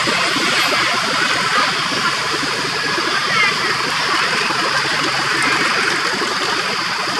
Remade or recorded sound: recorded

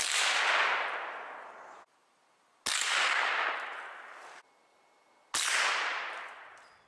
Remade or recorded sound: recorded